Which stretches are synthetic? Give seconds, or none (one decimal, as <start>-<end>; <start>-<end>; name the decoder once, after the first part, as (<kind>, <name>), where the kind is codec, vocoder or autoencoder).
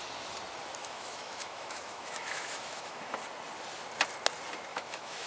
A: 0.8-3.2 (autoencoder, DAC-VAE); 4.7-5.3